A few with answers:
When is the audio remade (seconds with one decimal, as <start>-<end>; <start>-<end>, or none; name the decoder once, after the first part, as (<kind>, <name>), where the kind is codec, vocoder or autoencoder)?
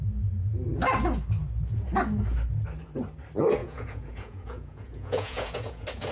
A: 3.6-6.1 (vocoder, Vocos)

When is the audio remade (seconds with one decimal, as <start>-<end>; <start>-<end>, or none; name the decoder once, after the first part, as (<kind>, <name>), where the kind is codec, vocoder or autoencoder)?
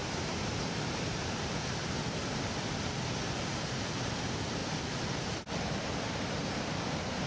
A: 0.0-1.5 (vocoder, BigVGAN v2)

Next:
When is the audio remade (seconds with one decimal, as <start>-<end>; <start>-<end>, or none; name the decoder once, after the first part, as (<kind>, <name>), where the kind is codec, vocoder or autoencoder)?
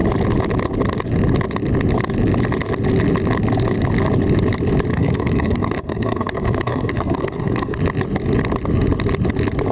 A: 4.9-7.8 (codec, SNAC)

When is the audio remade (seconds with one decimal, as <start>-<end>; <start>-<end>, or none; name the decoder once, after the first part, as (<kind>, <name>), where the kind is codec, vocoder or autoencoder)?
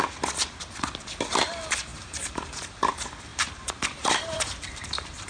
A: 1.9-2.9 (vocoder, BigVGAN v2); 3.3-5.3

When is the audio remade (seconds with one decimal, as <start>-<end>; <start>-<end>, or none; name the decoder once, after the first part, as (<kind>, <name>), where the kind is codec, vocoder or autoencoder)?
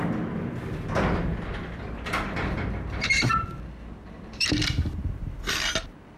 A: 1.3-5.0 (vocoder, BigVGAN v2)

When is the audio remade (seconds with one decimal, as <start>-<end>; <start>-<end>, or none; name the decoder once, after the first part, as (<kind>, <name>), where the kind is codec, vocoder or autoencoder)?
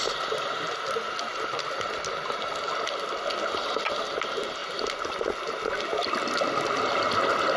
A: none